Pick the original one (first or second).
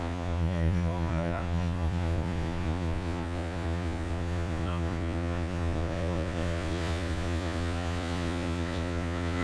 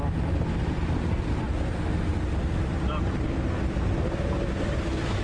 second